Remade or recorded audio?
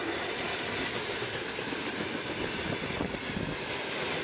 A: recorded